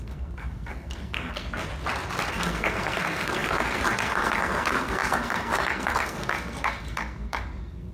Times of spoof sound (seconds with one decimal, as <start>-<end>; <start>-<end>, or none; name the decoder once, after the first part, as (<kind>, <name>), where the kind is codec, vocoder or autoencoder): 0.0-1.7 (codec, SNAC); 2.3-7.9